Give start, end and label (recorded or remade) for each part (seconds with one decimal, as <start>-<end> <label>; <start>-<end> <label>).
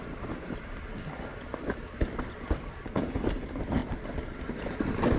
0.0-1.3 recorded; 1.3-2.3 remade; 2.3-3.8 recorded; 3.8-4.4 remade; 4.4-5.2 recorded